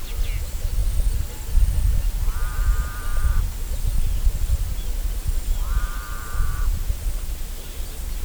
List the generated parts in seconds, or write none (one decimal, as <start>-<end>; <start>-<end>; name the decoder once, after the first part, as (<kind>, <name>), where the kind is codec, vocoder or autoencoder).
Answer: none